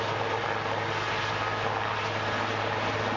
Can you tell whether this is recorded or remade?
recorded